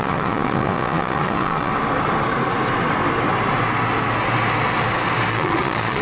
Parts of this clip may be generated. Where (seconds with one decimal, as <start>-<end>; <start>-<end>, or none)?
0.0-1.7; 5.3-6.0